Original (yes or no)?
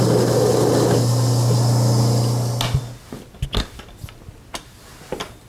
yes